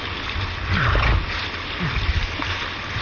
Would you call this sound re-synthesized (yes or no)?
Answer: no